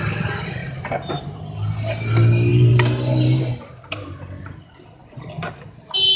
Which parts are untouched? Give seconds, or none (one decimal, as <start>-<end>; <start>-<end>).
0.0-0.6; 1.4-2.5; 3.5-5.0